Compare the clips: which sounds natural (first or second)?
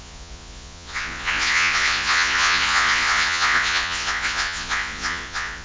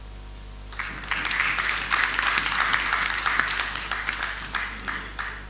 second